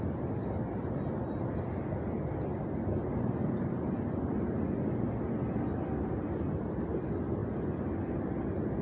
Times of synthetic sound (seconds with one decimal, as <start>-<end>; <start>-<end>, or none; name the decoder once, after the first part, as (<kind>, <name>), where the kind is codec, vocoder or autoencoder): none